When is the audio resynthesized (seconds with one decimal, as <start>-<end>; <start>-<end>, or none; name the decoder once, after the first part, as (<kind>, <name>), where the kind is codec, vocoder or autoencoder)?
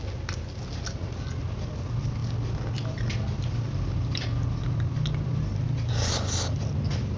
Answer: none